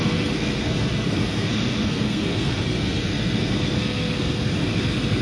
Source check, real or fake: fake